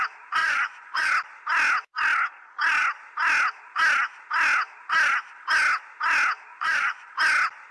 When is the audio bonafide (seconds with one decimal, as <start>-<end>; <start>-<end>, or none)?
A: 0.0-0.4; 1.1-6.5; 7.1-7.7